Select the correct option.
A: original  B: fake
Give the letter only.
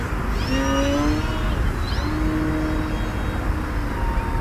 A